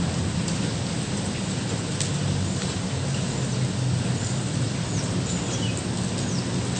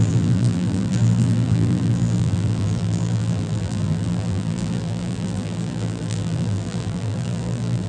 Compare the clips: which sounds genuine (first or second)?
first